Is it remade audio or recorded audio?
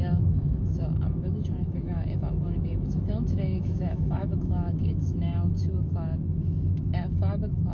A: remade